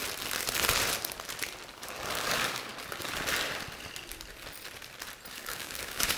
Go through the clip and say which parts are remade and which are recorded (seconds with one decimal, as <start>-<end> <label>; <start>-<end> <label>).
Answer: 0.0-1.7 recorded; 1.7-2.7 remade; 2.7-5.3 recorded; 5.3-6.2 remade